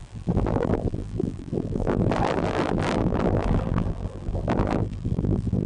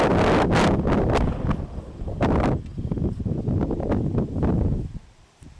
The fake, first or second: first